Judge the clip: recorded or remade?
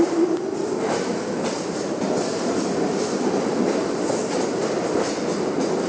recorded